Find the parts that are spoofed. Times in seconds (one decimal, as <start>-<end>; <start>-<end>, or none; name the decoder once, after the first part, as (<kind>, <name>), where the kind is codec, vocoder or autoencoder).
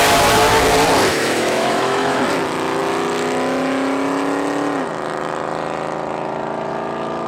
1.1-2.2 (autoencoder, DAC-VAE)